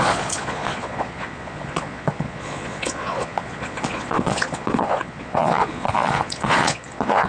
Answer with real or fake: fake